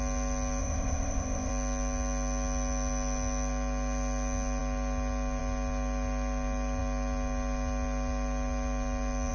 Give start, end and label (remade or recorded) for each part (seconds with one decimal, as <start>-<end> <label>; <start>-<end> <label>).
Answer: 0.0-0.6 recorded; 0.6-1.5 remade; 1.5-9.3 recorded